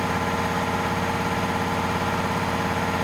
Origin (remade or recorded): recorded